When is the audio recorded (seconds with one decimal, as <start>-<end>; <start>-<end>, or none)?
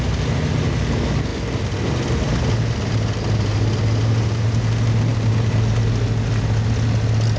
0.0-7.4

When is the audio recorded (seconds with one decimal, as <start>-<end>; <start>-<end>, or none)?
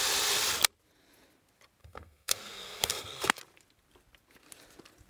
0.0-1.8; 3.4-5.1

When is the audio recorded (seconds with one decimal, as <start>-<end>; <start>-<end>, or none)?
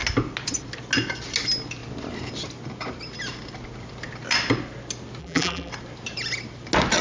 0.0-5.2; 5.7-7.0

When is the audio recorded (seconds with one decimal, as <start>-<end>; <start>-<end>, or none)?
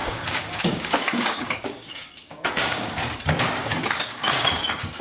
3.0-3.6; 4.5-5.0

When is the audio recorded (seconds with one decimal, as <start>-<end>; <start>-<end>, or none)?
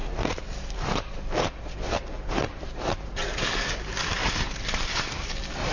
3.4-4.2; 5.3-5.7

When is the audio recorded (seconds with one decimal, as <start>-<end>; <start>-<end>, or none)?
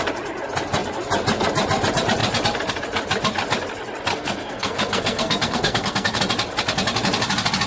0.0-4.1; 6.2-7.7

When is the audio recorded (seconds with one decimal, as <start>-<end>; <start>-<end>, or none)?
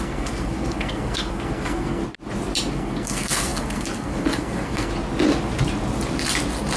2.0-2.7; 4.9-6.8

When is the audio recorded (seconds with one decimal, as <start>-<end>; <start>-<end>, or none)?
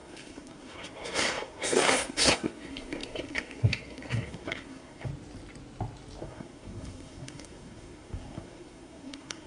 5.1-6.2